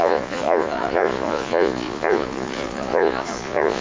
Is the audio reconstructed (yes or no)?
yes